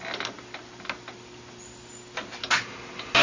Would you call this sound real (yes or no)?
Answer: yes